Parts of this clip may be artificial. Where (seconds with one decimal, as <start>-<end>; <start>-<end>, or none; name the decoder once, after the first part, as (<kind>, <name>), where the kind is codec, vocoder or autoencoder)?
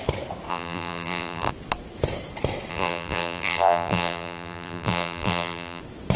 0.5-1.5 (vocoder, BigVGAN v2); 2.7-5.8